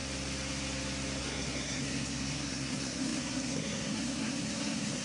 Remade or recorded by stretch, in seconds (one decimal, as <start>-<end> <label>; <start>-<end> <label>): 0.0-1.2 recorded; 1.2-5.0 remade